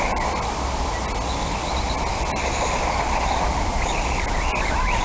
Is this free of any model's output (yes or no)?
yes